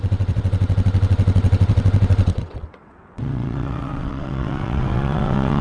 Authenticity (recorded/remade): remade